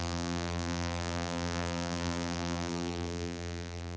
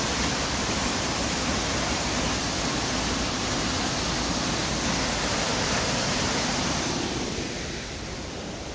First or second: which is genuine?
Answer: second